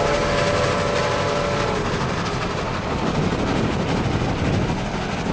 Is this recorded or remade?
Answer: recorded